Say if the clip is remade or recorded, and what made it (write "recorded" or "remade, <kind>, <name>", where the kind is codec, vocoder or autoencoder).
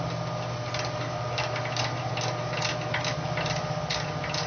recorded